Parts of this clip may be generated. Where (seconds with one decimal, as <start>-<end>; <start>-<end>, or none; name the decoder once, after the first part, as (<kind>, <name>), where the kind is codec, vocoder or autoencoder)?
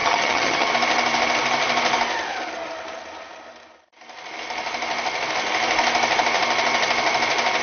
0.0-0.7 (vocoder, HiFi-GAN)